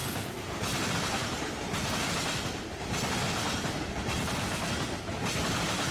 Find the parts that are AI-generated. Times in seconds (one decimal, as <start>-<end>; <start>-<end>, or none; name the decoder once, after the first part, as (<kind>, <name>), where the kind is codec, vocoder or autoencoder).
none

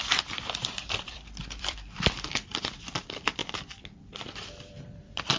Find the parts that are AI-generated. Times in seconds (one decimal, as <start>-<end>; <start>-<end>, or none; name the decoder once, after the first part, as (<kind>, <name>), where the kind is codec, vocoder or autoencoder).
0.0-3.4 (vocoder, BigVGAN v2); 4.4-5.4